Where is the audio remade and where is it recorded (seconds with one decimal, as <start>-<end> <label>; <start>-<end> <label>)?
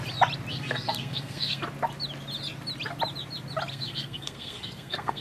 0.0-0.5 recorded; 0.5-1.6 remade; 1.6-3.7 recorded; 3.7-5.2 remade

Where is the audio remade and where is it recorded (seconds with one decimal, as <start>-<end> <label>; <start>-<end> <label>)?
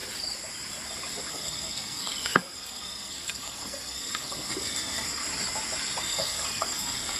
0.0-1.3 recorded; 1.3-5.2 remade; 5.2-6.0 recorded; 6.0-7.2 remade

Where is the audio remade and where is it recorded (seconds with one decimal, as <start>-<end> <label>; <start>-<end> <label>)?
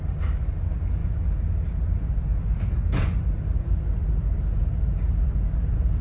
0.0-6.0 recorded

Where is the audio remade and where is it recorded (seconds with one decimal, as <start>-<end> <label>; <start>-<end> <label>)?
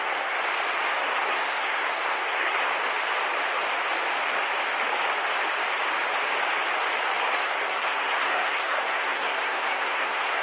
0.0-0.4 remade; 0.4-0.9 recorded; 0.9-2.7 remade; 2.7-7.2 recorded; 7.2-10.4 remade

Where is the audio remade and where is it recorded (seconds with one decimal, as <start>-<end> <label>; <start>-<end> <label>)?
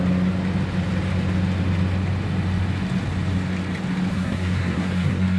0.0-4.1 recorded; 4.1-5.4 remade